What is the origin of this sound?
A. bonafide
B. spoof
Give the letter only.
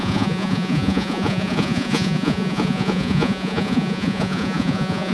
B